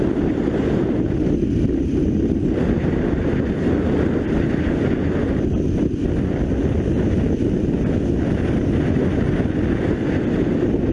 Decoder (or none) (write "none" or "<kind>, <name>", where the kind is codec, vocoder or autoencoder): none